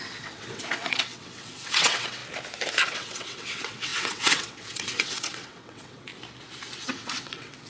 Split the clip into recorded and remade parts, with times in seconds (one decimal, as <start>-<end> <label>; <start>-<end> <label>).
0.0-2.2 remade; 2.2-2.9 recorded; 2.9-6.1 remade; 6.1-6.8 recorded; 6.8-7.7 remade